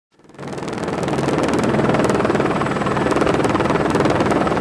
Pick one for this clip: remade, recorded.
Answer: recorded